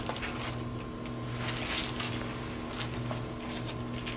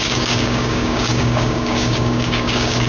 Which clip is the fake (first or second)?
second